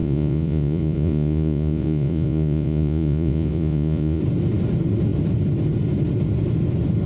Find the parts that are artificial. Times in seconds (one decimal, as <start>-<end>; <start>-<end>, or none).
0.0-4.2